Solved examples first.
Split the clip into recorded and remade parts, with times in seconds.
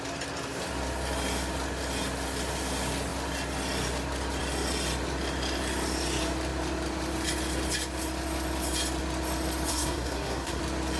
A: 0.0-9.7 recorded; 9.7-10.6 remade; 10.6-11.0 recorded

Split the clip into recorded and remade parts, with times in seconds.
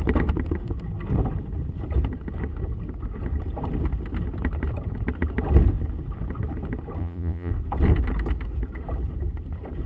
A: 0.0-7.0 recorded; 7.0-7.5 remade; 7.5-9.9 recorded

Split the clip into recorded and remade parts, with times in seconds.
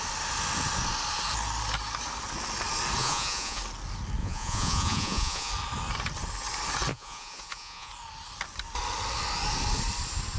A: 0.0-3.0 recorded; 3.0-3.6 remade; 3.6-4.2 recorded; 4.2-5.5 remade; 5.5-6.9 recorded; 6.9-7.9 remade; 7.9-10.4 recorded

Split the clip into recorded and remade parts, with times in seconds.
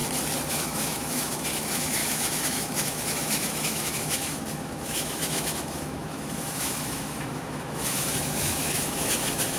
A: 0.0-0.5 recorded; 0.5-9.6 remade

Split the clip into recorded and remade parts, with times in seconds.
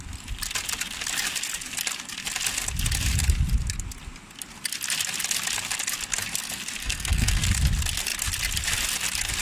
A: 0.0-6.8 recorded; 6.8-7.5 remade; 7.5-9.4 recorded